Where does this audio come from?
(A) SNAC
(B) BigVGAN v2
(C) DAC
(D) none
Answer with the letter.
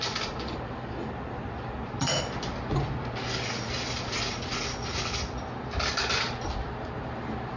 D